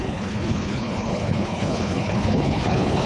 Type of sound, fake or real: fake